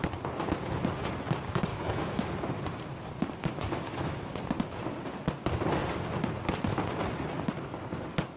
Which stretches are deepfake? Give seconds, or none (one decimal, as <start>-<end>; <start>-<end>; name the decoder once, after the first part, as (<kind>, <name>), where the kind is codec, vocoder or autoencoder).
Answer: 1.7-2.3 (autoencoder, DAC-VAE); 3.4-4.3